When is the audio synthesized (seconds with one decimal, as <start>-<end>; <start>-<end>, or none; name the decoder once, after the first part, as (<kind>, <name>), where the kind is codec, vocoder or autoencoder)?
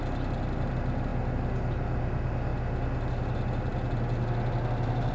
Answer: none